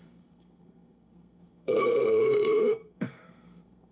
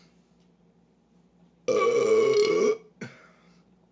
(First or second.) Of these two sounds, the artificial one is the first